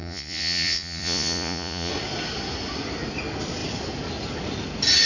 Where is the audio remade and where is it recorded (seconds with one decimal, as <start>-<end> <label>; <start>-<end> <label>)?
0.0-1.9 remade; 1.9-5.1 recorded